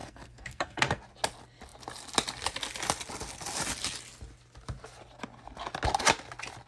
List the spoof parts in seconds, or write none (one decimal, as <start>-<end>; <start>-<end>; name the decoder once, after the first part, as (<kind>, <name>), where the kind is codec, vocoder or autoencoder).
0.0-1.0 (codec, SNAC)